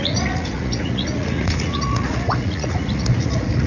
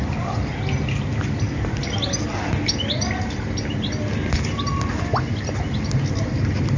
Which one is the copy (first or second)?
first